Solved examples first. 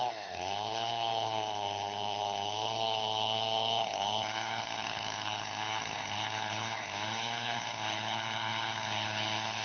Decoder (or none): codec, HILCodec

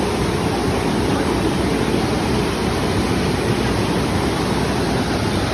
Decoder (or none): none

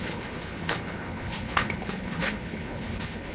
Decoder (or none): codec, HILCodec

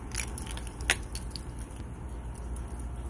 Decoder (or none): none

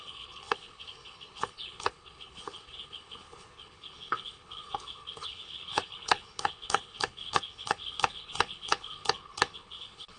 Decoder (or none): codec, HILCodec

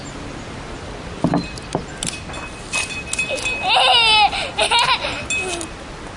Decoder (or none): none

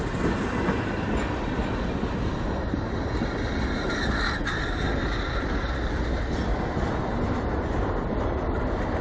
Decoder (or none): none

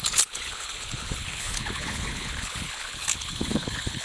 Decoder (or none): codec, HILCodec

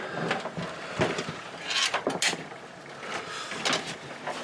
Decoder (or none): none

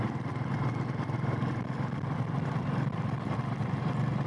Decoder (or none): none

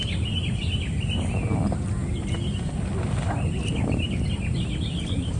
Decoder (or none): none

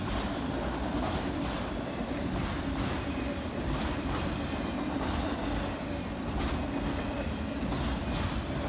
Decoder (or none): none